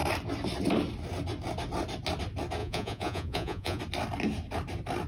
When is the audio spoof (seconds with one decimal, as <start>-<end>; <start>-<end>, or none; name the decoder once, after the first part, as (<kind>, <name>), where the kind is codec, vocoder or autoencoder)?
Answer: 2.6-3.8 (vocoder, Vocos)